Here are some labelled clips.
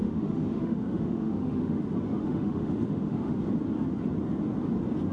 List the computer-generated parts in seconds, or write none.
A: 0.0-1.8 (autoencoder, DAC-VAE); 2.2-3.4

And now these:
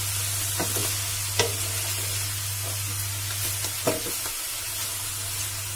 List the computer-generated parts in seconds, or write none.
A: none

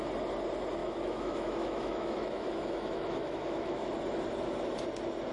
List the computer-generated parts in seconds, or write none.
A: 0.8-3.9 (autoencoder, DAC-VAE)

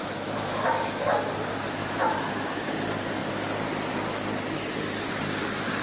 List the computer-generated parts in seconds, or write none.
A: 0.0-1.1 (autoencoder, DAC-VAE); 1.8-2.8

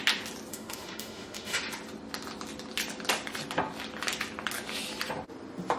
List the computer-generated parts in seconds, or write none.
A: 0.5-1.6 (autoencoder, DAC-VAE)

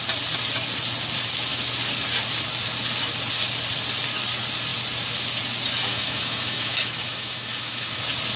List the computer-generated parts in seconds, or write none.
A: 5.9-8.0 (autoencoder, DAC-VAE)

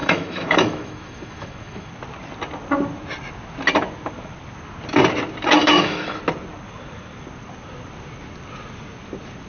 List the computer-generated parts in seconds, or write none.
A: 0.0-1.9 (autoencoder, DAC-VAE); 5.6-6.2